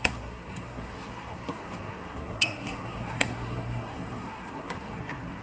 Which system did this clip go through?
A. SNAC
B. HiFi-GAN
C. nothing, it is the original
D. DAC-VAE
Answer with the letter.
A